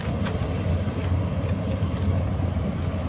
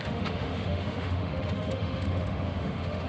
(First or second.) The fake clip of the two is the second